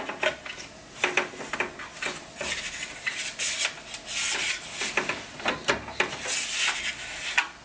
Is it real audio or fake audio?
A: real